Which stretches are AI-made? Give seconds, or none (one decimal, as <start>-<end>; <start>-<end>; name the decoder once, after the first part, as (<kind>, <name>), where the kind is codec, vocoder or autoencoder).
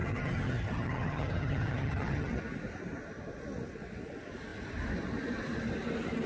0.0-2.4 (vocoder, HiFi-GAN)